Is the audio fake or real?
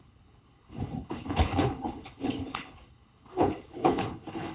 fake